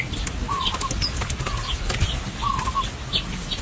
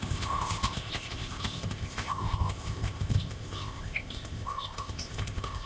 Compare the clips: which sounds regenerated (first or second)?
second